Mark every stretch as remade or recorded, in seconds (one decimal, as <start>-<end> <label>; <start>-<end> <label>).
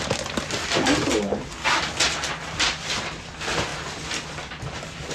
0.0-5.1 recorded